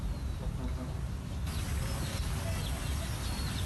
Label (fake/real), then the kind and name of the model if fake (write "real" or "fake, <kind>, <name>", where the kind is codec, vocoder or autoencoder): real